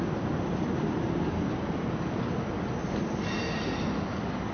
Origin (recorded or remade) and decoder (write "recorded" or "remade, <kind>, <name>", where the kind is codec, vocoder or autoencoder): recorded